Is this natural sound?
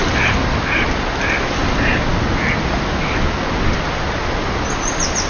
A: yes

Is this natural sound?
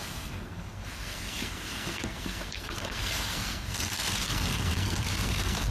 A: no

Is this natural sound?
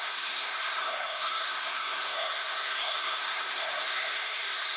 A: no